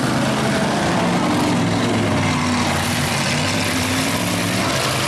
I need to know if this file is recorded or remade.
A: recorded